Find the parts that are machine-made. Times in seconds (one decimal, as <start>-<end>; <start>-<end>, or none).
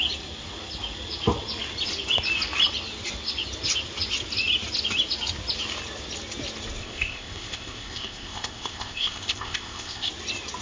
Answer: 6.8-10.1